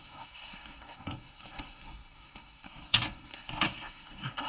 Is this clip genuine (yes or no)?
no